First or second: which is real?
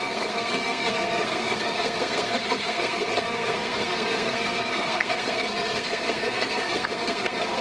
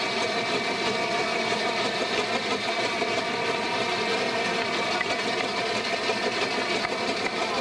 second